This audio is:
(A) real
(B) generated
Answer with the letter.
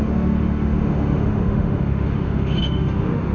B